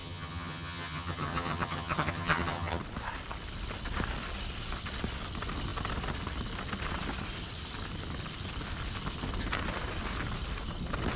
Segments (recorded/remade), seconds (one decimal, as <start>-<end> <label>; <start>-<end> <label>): 0.0-2.8 remade; 2.8-11.2 recorded

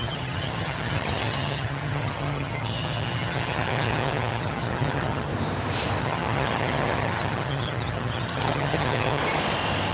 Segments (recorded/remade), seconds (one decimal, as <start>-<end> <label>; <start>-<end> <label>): 0.0-5.3 remade; 5.3-6.0 recorded; 6.0-9.2 remade; 9.2-9.9 recorded

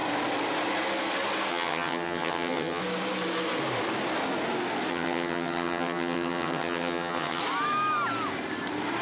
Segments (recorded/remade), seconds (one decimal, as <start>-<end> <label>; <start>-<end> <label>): 0.0-1.5 recorded; 1.5-2.8 remade; 2.8-4.9 recorded; 4.9-7.4 remade; 7.4-9.0 recorded